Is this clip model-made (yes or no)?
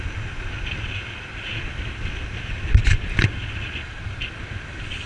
no